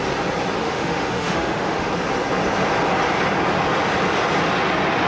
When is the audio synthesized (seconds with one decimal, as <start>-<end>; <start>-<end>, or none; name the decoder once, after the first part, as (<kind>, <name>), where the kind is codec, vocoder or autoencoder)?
0.6-1.9 (autoencoder, DAC-VAE)